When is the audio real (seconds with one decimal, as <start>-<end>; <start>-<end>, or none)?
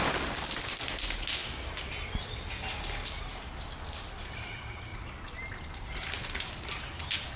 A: 0.0-4.9; 6.7-7.4